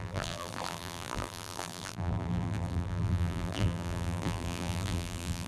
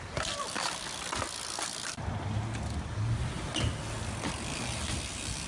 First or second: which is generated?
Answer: first